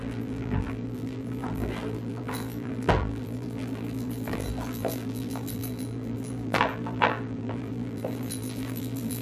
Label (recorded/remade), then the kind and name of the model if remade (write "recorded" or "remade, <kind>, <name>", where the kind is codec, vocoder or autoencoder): remade, vocoder, BigVGAN v2